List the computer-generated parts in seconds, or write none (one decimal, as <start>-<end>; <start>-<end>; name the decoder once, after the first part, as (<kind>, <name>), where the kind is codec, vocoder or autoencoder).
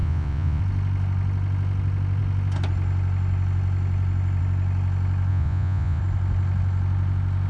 0.0-0.6 (vocoder, Vocos); 5.3-6.0